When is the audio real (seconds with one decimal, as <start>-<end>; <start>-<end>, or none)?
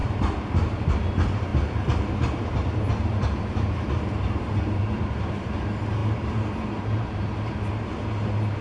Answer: none